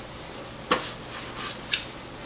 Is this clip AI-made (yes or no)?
no